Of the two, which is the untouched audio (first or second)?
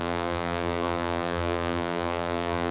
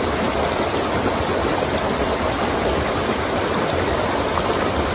second